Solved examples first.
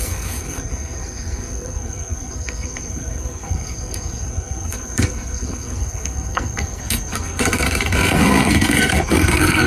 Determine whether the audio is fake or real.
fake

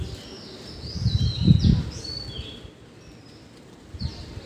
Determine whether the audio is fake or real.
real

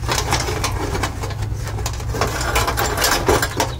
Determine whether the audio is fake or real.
real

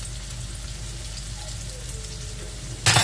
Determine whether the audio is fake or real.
real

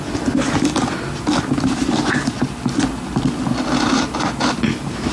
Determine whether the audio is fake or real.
real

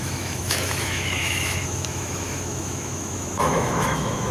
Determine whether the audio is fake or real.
fake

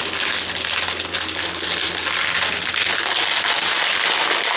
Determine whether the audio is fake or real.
real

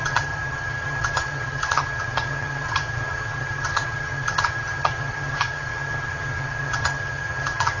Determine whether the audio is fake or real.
fake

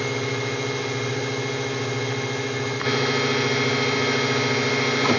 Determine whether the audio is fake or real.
real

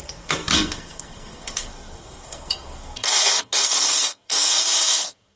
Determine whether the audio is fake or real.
fake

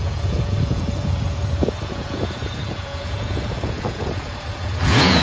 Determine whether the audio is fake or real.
fake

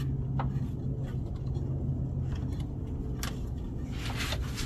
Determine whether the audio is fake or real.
real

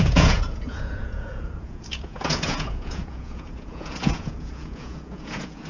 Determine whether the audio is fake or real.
fake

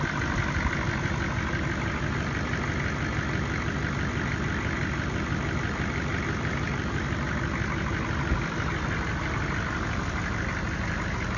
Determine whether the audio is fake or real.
real